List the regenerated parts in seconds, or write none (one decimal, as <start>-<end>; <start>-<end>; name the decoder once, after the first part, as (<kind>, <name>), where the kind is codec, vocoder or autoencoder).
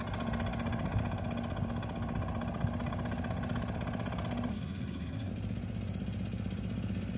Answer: 4.5-5.3 (codec, SNAC)